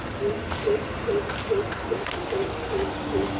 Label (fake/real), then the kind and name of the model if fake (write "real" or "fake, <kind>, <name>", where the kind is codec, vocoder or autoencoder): real